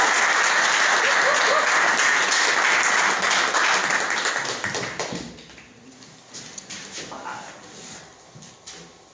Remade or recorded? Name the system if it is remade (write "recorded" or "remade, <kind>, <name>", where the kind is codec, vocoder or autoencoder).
recorded